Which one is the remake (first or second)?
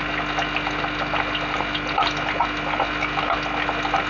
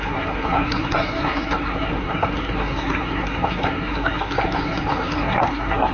second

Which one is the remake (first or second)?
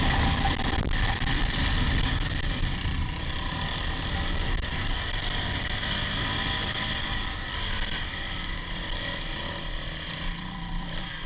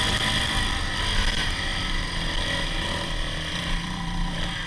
first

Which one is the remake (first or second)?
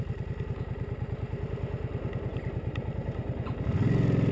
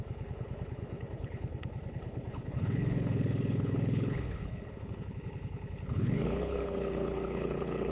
second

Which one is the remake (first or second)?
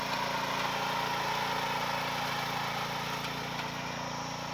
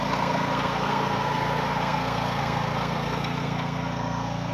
second